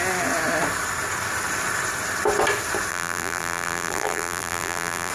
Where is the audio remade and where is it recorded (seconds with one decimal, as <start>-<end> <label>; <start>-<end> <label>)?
0.0-2.9 recorded; 2.9-5.1 remade